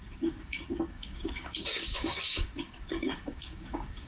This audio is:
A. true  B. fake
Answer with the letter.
B